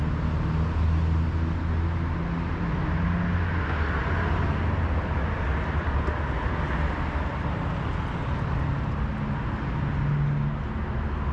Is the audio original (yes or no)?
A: yes